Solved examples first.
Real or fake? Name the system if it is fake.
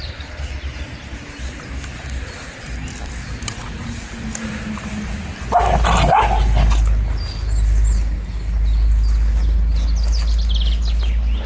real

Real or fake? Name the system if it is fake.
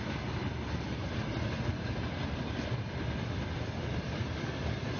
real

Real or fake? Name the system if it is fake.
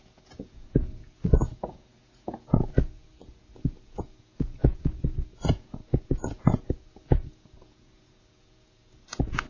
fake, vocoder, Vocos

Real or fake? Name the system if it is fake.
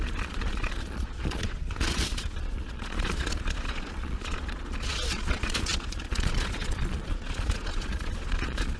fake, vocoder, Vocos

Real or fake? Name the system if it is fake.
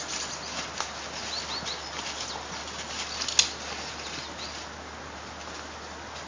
real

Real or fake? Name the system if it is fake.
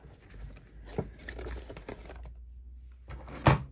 real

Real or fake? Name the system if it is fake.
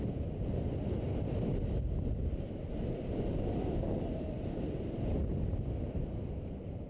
real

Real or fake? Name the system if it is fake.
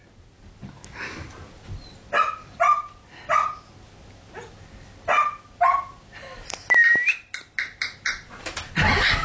real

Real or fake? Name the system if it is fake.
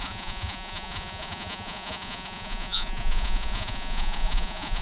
fake, vocoder, Vocos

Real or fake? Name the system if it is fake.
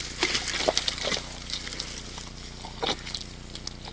real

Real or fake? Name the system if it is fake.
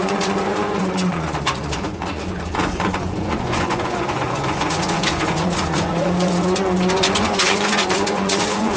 fake, vocoder, Vocos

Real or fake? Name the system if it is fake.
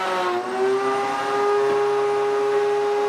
real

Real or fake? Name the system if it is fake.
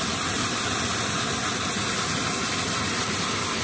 real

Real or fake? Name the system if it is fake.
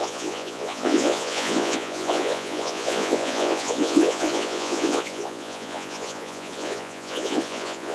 fake, vocoder, Vocos